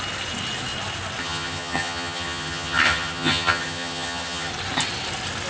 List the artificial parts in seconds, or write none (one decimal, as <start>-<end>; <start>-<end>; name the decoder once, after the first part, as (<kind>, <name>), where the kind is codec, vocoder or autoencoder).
1.2-4.5 (vocoder, HiFi-GAN)